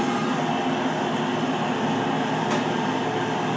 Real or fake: real